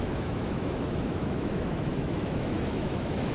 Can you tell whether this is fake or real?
fake